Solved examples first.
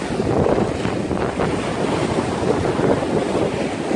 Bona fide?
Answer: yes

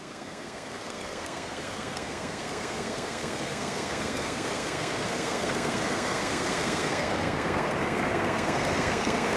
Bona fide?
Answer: no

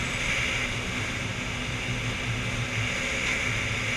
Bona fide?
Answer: yes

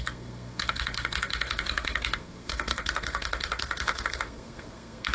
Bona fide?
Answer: no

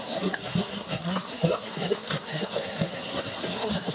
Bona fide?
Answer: no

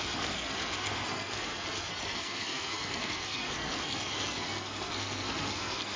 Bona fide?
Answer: no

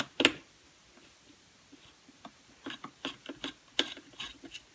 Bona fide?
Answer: yes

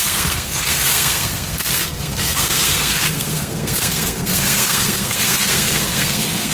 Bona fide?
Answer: no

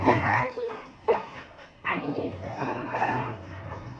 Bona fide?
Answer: no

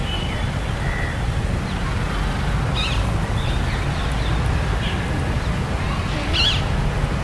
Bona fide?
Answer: yes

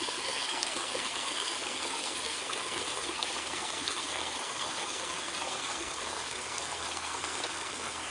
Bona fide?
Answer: no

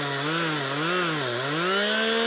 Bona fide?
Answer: yes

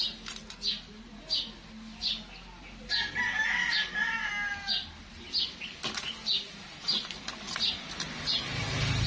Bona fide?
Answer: yes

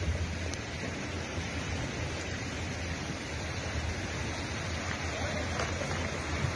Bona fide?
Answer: yes